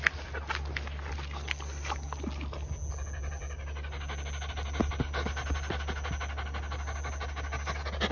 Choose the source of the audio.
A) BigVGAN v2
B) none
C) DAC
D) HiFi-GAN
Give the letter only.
B